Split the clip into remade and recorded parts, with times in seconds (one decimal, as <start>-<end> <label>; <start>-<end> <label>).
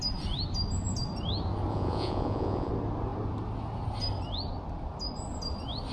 0.0-1.7 recorded; 1.7-2.7 remade; 2.7-5.9 recorded